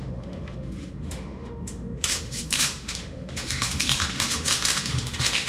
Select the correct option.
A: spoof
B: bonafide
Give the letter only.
A